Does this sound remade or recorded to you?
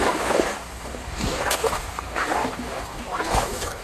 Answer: remade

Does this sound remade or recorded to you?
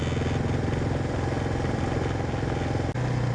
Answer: recorded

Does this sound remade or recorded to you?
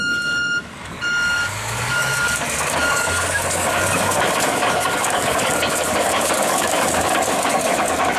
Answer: remade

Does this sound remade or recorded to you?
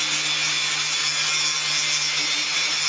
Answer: recorded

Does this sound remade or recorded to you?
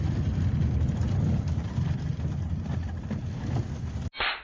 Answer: recorded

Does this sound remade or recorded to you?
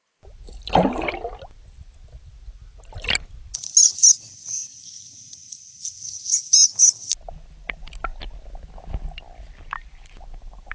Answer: recorded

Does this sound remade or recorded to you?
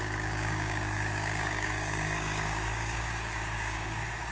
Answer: remade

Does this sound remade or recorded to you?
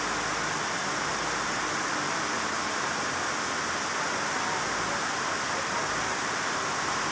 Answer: recorded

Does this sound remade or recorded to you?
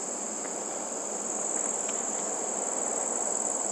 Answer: recorded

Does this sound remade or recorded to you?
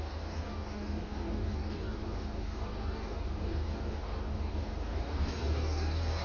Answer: remade